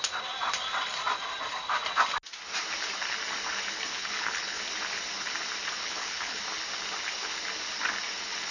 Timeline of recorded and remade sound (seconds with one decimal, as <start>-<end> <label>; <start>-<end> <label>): 0.0-3.9 recorded; 3.9-4.6 remade; 4.6-5.8 recorded; 5.8-6.4 remade; 6.4-8.5 recorded